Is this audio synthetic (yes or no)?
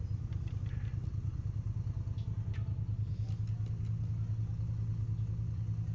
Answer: no